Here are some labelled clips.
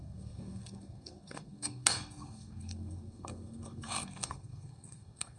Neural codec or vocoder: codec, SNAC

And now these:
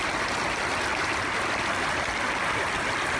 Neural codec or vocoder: none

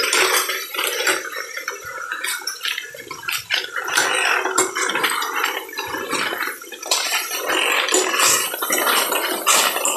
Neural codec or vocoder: none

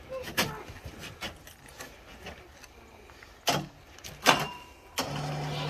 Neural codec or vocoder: none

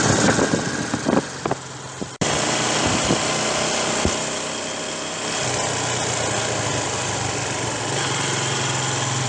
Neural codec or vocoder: none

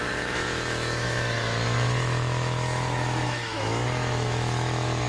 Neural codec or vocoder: autoencoder, DAC-VAE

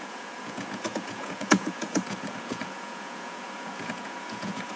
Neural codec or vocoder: vocoder, Vocos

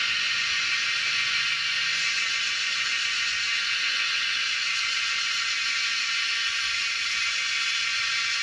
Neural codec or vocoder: vocoder, Vocos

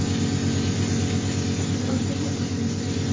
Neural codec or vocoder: none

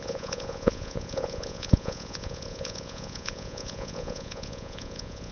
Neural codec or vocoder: vocoder, Vocos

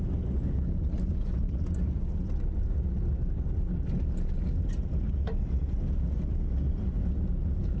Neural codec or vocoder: none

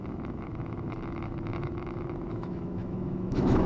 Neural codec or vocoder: autoencoder, DAC-VAE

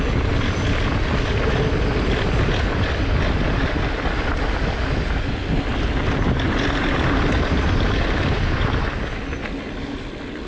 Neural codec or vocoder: none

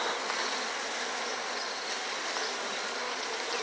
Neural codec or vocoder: none